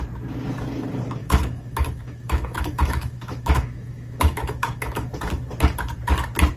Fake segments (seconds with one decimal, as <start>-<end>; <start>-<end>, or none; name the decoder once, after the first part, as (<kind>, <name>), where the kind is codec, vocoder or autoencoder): 1.2-5.2 (autoencoder, DAC-VAE)